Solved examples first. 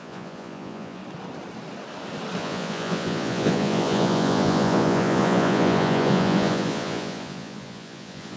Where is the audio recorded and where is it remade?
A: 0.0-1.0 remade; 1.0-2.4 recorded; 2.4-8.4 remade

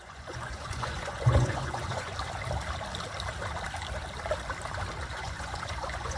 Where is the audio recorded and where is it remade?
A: 0.0-2.1 remade; 2.1-5.1 recorded; 5.1-6.2 remade